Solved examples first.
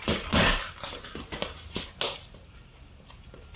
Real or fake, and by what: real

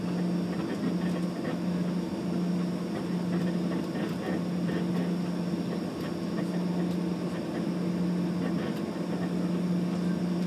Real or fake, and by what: real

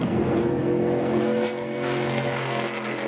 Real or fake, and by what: fake, codec, SNAC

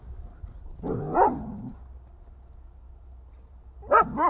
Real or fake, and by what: real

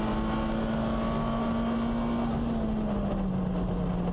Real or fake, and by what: real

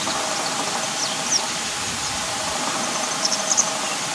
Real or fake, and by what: real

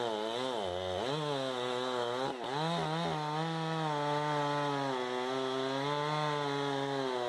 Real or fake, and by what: real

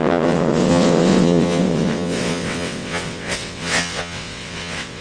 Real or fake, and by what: fake, vocoder, WaveNeXt